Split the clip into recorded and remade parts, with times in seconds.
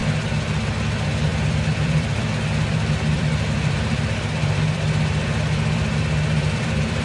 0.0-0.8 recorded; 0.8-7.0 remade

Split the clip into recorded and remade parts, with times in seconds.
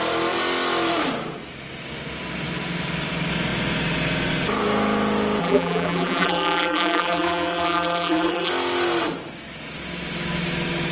0.0-5.4 recorded; 5.4-8.5 remade; 8.5-10.9 recorded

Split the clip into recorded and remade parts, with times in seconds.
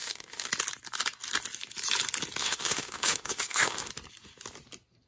0.0-0.5 remade; 0.5-2.4 recorded; 2.4-3.9 remade; 3.9-5.1 recorded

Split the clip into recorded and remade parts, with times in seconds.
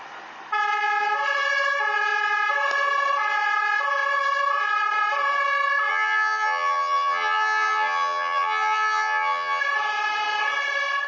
0.0-5.9 recorded; 5.9-9.6 remade; 9.6-11.1 recorded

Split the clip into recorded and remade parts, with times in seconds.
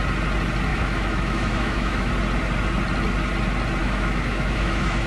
0.0-0.7 recorded; 0.7-2.1 remade; 2.1-3.8 recorded; 3.8-5.1 remade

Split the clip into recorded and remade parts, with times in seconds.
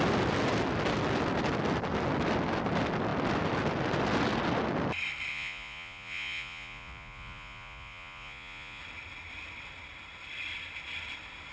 0.0-5.3 recorded; 5.3-8.8 remade; 8.8-11.5 recorded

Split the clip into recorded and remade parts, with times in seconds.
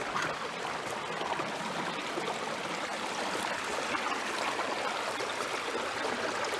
0.0-6.6 recorded